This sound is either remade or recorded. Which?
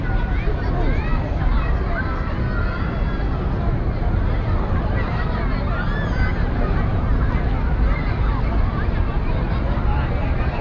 recorded